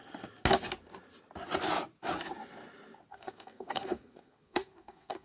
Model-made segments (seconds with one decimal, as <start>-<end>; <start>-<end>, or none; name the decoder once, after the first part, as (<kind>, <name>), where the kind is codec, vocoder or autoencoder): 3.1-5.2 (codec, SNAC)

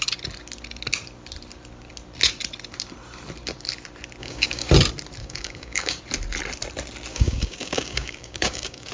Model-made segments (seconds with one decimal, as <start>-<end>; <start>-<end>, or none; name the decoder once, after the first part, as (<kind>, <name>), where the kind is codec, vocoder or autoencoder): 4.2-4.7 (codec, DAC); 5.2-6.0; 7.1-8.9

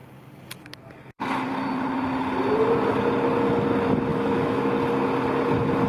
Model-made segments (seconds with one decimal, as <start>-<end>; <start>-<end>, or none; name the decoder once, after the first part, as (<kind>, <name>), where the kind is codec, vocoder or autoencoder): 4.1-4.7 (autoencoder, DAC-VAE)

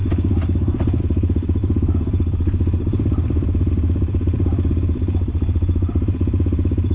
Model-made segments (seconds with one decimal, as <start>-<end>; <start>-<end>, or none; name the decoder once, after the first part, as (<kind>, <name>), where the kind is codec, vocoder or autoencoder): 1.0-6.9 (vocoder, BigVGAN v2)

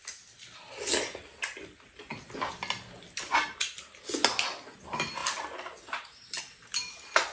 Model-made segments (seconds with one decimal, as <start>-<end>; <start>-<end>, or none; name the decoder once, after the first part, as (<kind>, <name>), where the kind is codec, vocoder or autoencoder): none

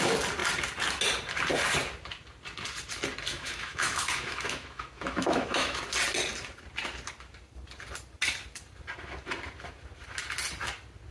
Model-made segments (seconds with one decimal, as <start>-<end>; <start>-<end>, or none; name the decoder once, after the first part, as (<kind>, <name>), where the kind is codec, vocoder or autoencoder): 3.3-5.8 (autoencoder, DAC-VAE)

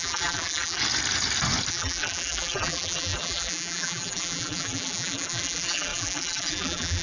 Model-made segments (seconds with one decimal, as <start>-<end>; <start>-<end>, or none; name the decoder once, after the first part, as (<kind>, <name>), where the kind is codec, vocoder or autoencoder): 0.0-0.8 (vocoder, BigVGAN v2); 1.7-7.0